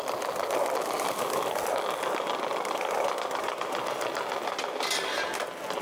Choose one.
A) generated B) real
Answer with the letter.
B